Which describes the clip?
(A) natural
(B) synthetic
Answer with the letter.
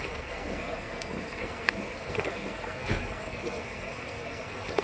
B